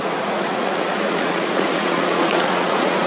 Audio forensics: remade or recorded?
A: remade